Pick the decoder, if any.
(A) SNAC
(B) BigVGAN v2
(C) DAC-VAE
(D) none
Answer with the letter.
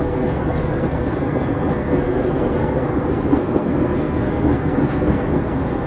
A